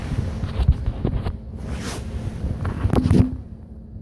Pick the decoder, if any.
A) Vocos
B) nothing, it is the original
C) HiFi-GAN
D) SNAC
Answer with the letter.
B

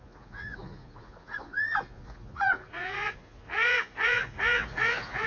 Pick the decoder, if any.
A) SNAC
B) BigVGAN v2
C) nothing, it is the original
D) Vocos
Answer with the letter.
D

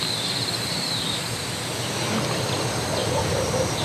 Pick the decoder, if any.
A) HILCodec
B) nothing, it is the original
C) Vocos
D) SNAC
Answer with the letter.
B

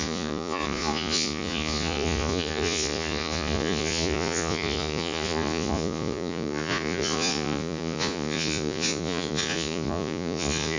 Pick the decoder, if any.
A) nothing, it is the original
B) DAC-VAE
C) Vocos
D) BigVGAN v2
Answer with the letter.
C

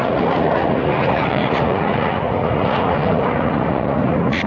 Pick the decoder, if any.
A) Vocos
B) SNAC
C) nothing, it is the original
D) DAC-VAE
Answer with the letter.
A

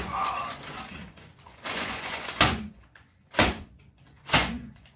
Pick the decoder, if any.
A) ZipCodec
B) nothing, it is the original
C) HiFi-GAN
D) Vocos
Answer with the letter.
D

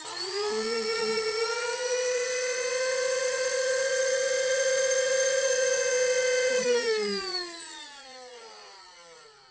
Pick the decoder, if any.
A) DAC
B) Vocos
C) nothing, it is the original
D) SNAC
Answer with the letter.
B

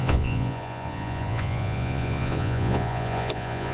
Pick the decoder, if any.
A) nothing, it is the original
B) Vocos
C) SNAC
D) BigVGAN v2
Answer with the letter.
B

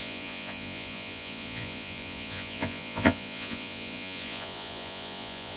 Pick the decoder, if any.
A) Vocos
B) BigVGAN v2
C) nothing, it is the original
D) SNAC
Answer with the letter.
A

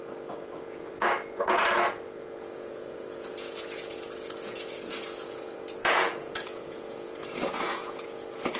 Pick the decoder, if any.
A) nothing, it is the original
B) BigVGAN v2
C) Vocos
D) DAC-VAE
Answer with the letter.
C